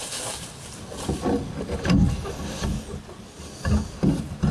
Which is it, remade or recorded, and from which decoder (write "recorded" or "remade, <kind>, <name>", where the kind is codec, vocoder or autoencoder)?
recorded